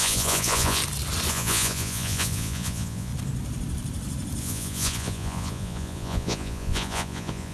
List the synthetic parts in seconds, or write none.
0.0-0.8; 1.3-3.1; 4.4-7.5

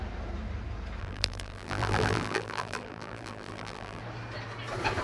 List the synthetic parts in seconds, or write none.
1.0-4.0

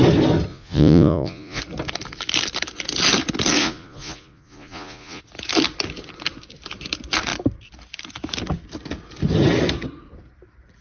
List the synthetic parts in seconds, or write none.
0.5-1.6; 3.6-5.2

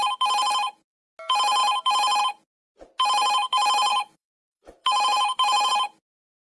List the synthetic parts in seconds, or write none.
3.9-5.7

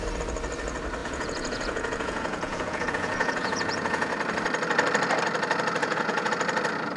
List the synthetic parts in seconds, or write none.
1.0-4.1; 5.8-6.3